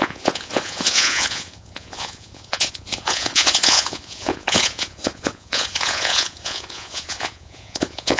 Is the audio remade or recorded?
remade